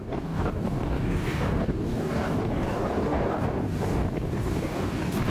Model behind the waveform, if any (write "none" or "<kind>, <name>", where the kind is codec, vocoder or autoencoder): codec, DAC